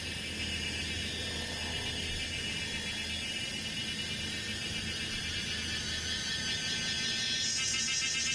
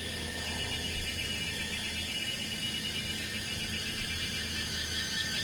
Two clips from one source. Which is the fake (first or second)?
second